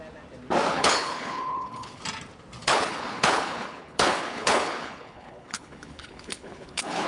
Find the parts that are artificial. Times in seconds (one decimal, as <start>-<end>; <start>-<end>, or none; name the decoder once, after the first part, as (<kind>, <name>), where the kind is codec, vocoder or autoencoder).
0.7-2.0 (codec, HILCodec); 2.6-7.1

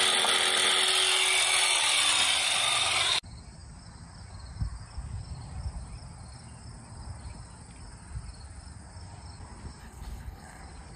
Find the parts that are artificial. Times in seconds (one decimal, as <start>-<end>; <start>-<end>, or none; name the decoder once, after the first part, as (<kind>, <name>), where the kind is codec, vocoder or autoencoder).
9.8-10.6 (codec, HILCodec)